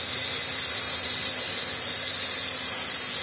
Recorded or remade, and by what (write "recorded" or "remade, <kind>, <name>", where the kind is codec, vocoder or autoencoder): recorded